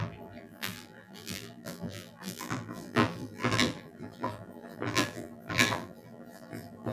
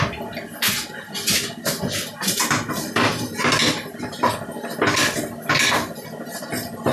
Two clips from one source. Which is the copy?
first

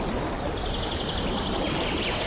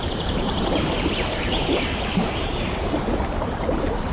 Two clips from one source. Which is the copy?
second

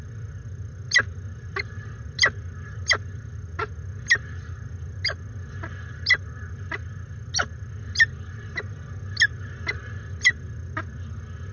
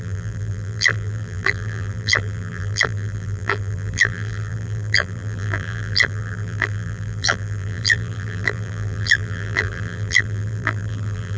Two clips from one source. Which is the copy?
second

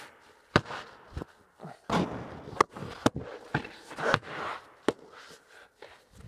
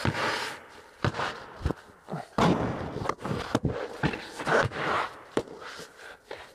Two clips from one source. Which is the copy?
second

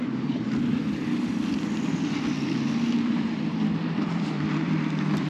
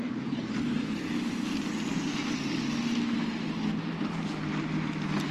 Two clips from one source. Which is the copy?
first